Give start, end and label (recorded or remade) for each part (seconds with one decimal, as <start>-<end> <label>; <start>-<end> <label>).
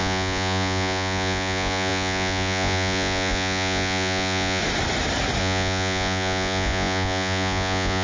0.0-4.6 remade; 4.6-5.4 recorded; 5.4-8.0 remade